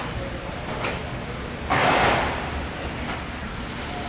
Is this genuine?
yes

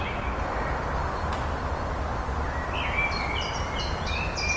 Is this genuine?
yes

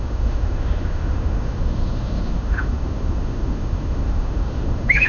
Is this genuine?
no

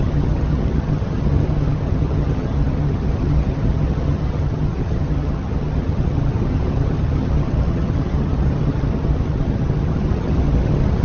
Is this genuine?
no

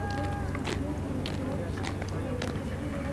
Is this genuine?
yes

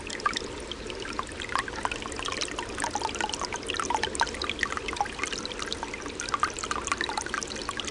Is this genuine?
yes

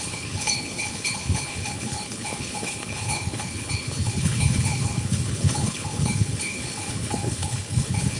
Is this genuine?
no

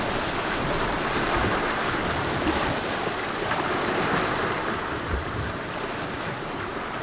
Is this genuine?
yes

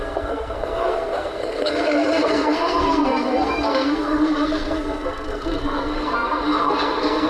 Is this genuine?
no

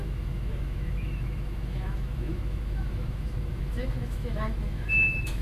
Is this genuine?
no